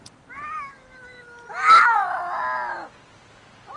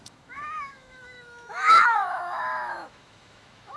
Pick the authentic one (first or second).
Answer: first